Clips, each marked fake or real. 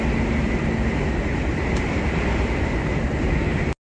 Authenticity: real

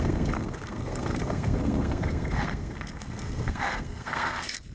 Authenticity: fake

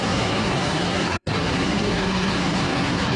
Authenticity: fake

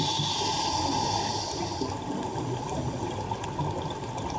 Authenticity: real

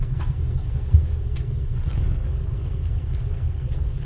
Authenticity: fake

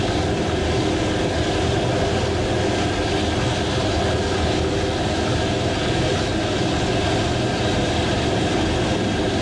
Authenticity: real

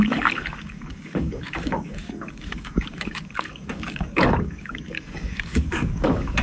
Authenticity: fake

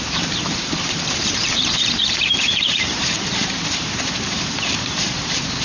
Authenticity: fake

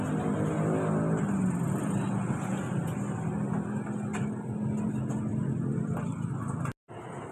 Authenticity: real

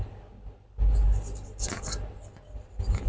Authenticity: real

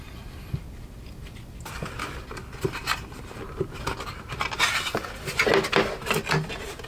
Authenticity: real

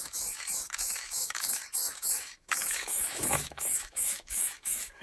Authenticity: fake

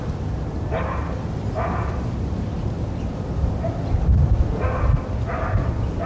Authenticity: real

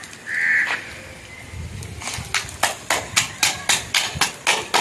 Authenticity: real